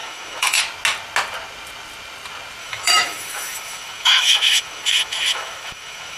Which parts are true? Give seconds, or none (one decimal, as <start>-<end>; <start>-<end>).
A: 0.6-2.6